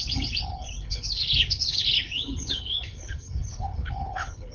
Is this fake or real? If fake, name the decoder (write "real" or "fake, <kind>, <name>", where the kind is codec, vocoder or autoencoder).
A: fake, codec, HILCodec